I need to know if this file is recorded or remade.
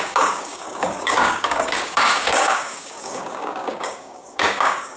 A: remade